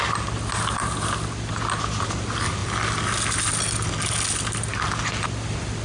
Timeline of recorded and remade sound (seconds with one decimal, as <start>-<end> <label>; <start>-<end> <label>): 0.0-5.8 recorded